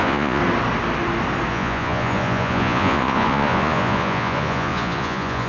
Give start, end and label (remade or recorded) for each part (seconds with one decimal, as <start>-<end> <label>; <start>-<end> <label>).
0.0-0.4 remade; 0.4-1.5 recorded; 1.5-5.5 remade